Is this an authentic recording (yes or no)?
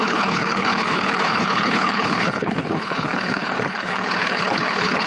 no